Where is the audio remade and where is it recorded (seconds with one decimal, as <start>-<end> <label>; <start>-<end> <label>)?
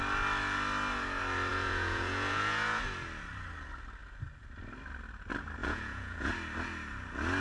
0.0-1.5 recorded; 1.5-2.8 remade; 2.8-5.6 recorded; 5.6-6.3 remade; 6.3-7.4 recorded